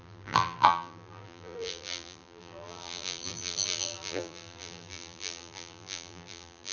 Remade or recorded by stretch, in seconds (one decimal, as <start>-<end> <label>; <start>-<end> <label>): 0.0-6.7 remade